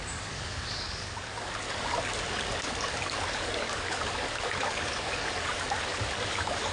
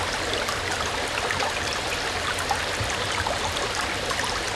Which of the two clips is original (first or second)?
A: second